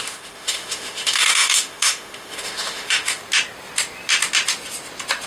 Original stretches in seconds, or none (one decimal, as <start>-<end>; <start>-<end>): 3.2-5.3